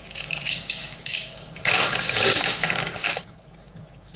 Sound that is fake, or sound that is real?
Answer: fake